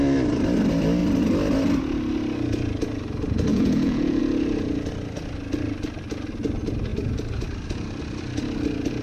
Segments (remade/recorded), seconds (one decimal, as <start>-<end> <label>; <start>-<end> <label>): 0.0-3.5 recorded; 3.5-4.2 remade; 4.2-9.0 recorded

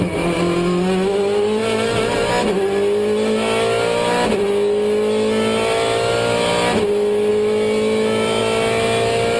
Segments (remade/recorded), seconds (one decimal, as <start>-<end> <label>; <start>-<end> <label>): 0.0-9.4 recorded